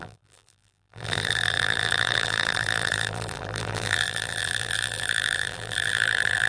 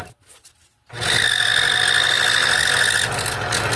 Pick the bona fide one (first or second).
second